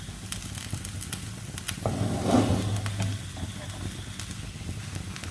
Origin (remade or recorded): recorded